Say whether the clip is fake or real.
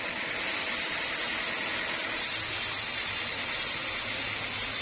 real